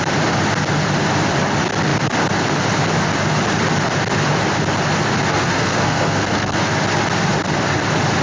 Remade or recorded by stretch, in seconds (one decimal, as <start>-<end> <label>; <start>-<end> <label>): 0.0-5.3 recorded; 5.3-6.7 remade; 6.7-8.2 recorded